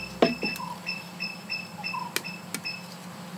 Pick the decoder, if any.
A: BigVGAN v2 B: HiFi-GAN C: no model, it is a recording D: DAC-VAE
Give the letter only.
C